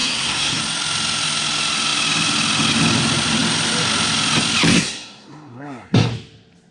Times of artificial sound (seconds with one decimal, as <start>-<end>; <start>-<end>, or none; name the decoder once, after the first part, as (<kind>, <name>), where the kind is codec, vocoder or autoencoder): 0.0-0.6 (codec, SNAC); 4.7-6.1